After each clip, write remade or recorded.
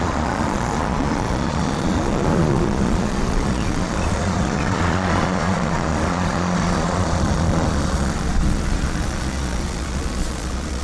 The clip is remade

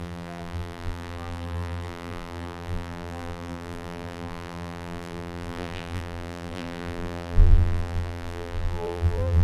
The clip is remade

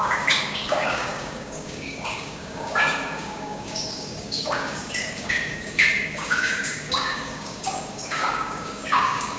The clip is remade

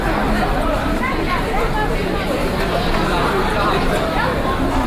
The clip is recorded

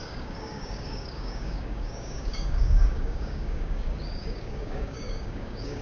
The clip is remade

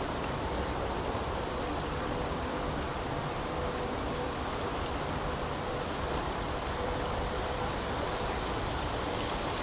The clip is remade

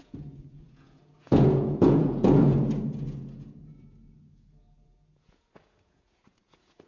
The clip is remade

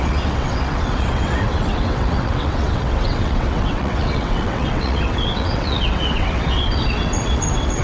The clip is remade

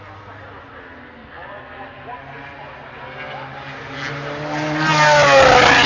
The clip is recorded